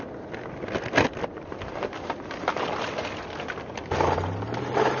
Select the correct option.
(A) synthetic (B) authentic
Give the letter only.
B